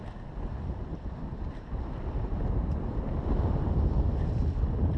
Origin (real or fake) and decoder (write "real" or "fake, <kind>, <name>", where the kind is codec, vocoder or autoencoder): real